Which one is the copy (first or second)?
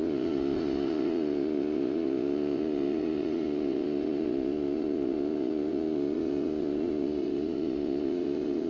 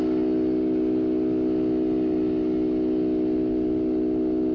first